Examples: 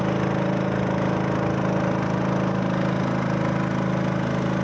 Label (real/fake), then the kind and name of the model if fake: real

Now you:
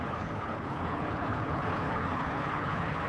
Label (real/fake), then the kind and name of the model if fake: fake, codec, HILCodec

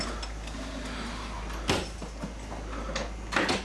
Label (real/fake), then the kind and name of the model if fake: real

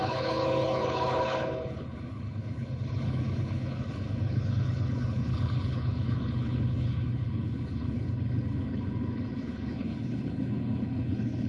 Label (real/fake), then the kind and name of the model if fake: fake, codec, HILCodec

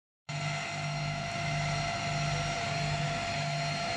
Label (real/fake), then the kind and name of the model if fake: real